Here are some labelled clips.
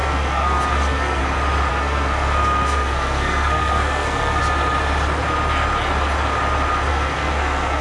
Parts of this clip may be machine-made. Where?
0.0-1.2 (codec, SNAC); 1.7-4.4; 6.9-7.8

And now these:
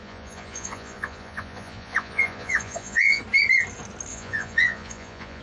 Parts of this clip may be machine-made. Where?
0.0-3.2 (vocoder, Vocos); 4.1-5.4